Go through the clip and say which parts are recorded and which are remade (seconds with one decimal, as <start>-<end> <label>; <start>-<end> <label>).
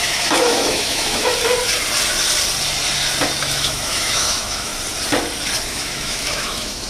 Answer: 0.0-1.3 remade; 1.3-3.4 recorded; 3.4-4.7 remade; 4.7-5.7 recorded; 5.7-6.9 remade